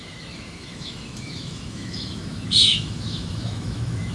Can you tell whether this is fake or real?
fake